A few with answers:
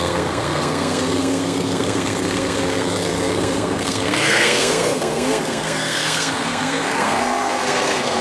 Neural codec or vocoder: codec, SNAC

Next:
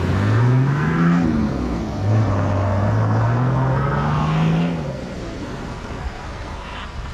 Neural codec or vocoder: codec, SNAC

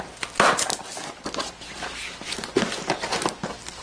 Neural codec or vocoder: none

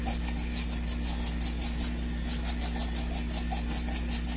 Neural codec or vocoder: none